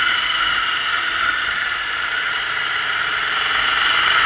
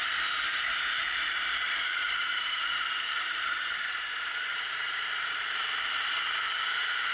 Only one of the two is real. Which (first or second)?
first